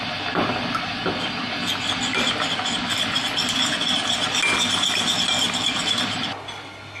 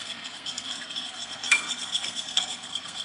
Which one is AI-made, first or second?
second